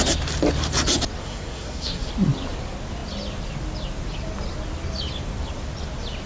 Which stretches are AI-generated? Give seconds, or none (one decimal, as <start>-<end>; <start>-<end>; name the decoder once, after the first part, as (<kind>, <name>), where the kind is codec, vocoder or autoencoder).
1.2-2.1 (codec, SNAC)